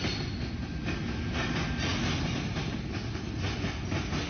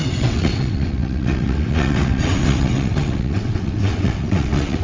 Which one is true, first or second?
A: first